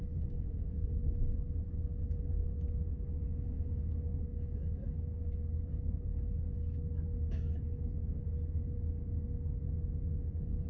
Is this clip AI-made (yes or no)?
yes